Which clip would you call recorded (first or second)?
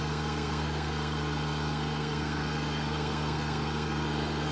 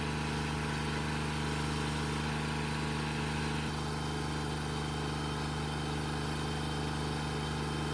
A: second